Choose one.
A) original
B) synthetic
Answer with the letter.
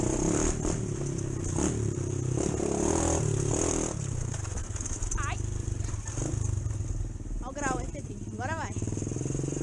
A